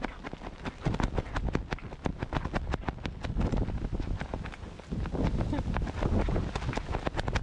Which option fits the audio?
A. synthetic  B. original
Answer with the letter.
B